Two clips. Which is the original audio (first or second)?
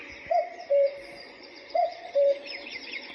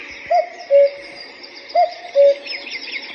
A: second